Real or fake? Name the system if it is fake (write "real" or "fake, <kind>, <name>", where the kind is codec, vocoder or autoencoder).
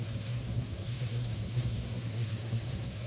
fake, codec, SNAC